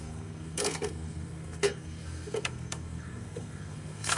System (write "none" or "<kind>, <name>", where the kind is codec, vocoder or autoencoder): codec, SNAC